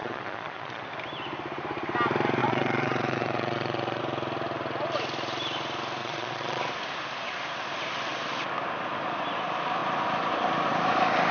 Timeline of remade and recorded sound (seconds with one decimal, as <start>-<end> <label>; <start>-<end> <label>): 0.0-0.8 remade; 0.8-2.4 recorded; 2.4-4.0 remade; 4.0-6.0 recorded; 6.0-6.6 remade; 6.6-11.3 recorded